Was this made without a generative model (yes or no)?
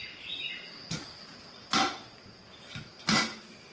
yes